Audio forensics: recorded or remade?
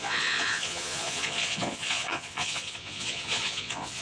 remade